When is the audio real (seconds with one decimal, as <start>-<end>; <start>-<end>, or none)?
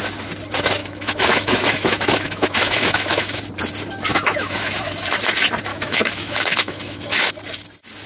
0.0-0.8; 3.4-4.1; 4.9-5.7; 7.3-8.1